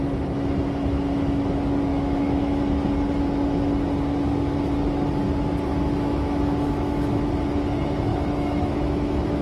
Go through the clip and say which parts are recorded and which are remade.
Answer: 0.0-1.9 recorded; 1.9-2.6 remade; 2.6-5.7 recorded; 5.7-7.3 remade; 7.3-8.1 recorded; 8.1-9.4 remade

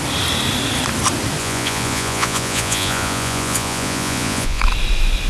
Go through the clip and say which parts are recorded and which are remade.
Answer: 0.0-1.4 recorded; 1.4-4.6 remade; 4.6-5.3 recorded

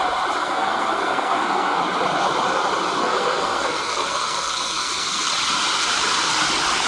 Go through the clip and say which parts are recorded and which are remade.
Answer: 0.0-0.4 recorded; 0.4-1.8 remade; 1.8-3.0 recorded; 3.0-5.3 remade; 5.3-6.9 recorded

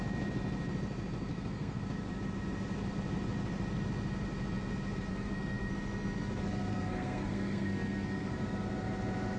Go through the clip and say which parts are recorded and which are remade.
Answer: 0.0-1.3 recorded; 1.3-1.8 remade; 1.8-5.1 recorded; 5.1-5.7 remade; 5.7-6.7 recorded; 6.7-8.3 remade; 8.3-9.4 recorded

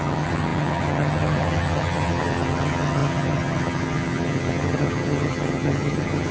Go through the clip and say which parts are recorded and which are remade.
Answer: 0.0-6.3 remade